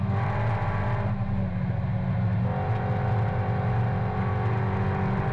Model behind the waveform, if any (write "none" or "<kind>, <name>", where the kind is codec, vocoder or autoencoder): none